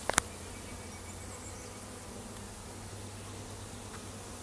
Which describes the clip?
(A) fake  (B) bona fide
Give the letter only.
B